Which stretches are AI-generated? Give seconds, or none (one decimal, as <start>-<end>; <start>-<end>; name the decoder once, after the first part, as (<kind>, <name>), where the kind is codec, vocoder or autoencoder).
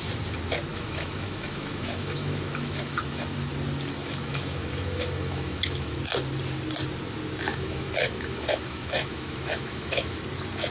0.7-3.5 (autoencoder, DAC-VAE); 4.0-6.0; 7.5-10.2